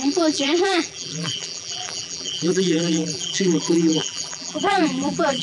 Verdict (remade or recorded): remade